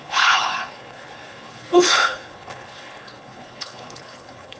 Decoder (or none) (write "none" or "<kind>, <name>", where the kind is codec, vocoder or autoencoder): codec, HILCodec